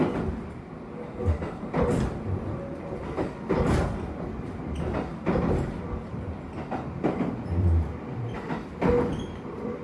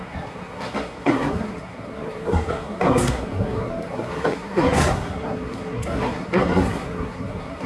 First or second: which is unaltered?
first